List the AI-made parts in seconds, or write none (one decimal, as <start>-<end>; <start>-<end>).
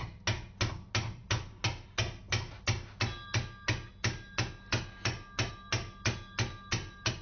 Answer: none